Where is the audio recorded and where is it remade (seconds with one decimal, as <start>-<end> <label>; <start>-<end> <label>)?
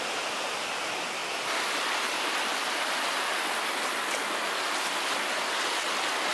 0.0-1.2 remade; 1.2-1.8 recorded; 1.8-2.5 remade; 2.5-6.3 recorded